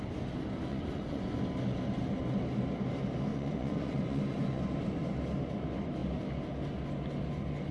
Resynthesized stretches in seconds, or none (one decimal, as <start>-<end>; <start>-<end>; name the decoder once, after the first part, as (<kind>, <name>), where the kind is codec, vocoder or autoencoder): 0.7-1.4 (vocoder, Vocos); 3.3-4.6

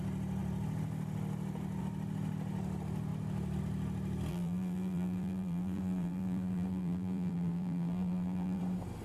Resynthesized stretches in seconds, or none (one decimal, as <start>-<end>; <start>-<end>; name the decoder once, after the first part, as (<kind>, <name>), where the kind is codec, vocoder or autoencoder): 4.3-8.6 (vocoder, BigVGAN v2)

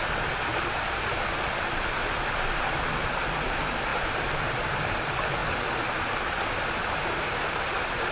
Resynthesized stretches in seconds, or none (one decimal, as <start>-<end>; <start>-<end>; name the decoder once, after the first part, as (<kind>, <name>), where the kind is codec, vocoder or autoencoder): none